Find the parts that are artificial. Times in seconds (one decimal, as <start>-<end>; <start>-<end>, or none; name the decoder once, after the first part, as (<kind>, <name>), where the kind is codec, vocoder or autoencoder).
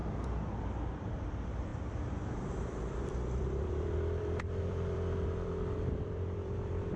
1.1-7.0 (vocoder, BigVGAN v2)